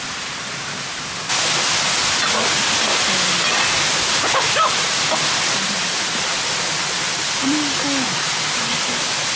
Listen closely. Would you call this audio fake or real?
real